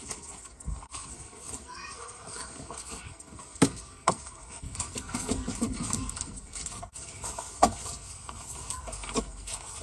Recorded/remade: remade